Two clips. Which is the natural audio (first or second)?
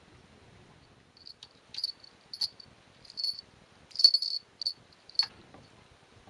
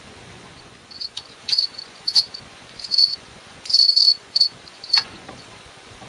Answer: first